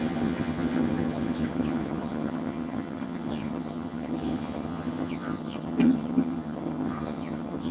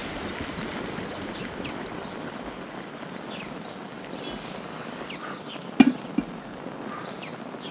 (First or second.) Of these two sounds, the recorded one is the second